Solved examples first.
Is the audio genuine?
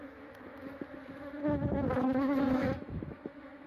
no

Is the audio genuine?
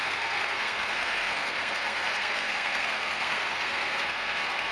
no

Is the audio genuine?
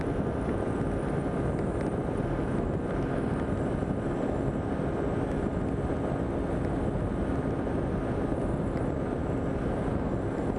yes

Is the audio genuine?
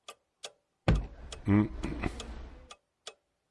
yes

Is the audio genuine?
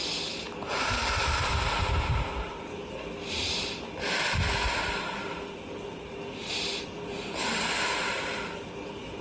yes